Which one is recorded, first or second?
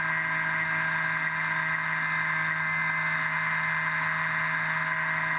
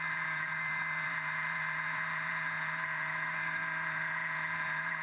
first